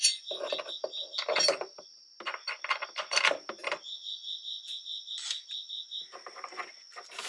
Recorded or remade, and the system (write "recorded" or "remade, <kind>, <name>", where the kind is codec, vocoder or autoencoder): recorded